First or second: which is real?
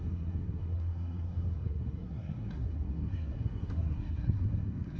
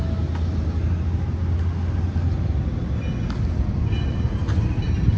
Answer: second